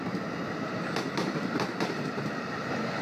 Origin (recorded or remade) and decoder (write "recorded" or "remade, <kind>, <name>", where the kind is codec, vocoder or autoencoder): recorded